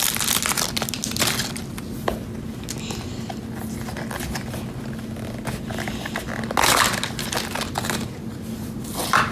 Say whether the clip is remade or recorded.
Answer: recorded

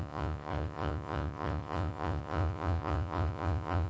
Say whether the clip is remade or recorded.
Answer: remade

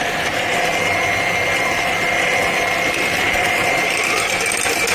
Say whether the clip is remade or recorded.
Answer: recorded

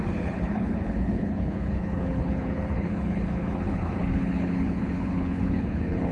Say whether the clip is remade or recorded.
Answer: remade